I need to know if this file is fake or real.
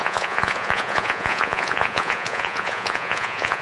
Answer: fake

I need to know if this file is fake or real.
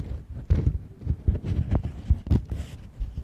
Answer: real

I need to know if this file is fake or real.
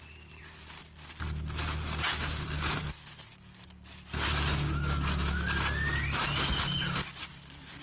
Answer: real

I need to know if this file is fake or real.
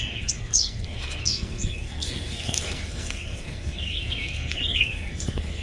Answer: fake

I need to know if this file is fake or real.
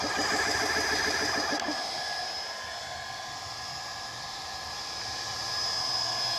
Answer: real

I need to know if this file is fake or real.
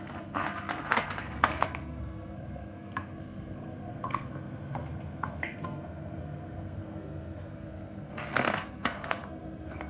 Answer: fake